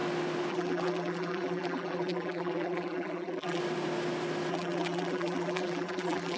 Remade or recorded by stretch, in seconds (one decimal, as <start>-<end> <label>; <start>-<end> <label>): 0.0-0.5 recorded; 0.5-3.6 remade; 3.6-4.5 recorded; 4.5-6.4 remade